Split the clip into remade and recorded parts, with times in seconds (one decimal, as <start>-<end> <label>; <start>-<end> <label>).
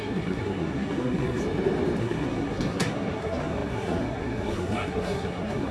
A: 0.0-1.4 remade; 1.4-2.0 recorded; 2.0-5.7 remade